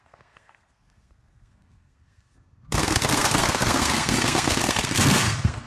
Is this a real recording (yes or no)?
no